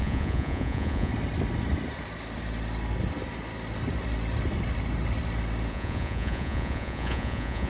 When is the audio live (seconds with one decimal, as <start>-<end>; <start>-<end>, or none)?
1.1-5.7